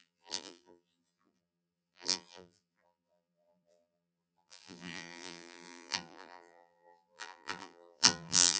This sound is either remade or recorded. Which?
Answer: remade